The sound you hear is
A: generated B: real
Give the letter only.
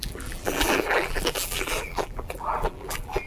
A